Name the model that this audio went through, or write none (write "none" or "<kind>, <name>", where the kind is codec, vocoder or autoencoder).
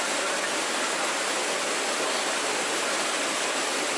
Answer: none